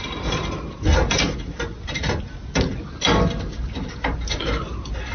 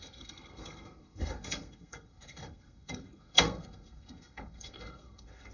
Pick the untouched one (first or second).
first